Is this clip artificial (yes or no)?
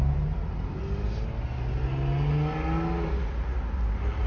no